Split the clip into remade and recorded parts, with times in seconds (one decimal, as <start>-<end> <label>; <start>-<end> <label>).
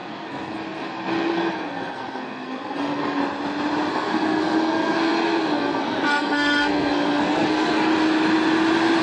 0.0-3.2 remade; 3.2-3.9 recorded; 3.9-7.9 remade; 7.9-9.0 recorded